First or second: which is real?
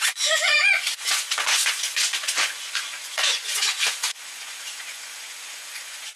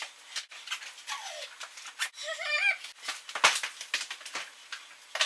second